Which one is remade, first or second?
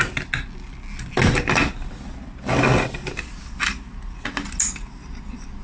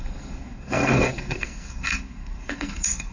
second